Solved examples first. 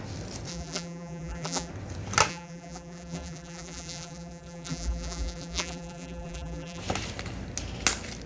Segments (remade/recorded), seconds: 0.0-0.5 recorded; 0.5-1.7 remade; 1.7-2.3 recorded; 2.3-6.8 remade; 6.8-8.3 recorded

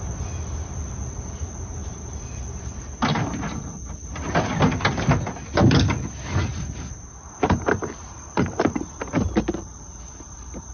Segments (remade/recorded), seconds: 0.0-1.8 recorded; 1.8-4.2 remade; 4.2-6.5 recorded; 6.5-10.7 remade

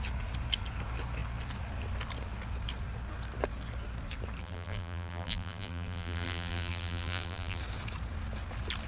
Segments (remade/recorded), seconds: 0.0-4.4 recorded; 4.4-7.6 remade; 7.6-8.9 recorded

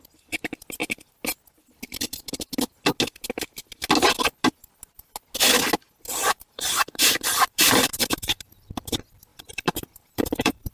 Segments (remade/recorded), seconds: 0.0-6.2 recorded; 6.2-8.4 remade; 8.4-9.3 recorded; 9.3-10.7 remade